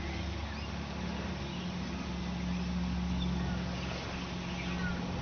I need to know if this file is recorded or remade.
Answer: recorded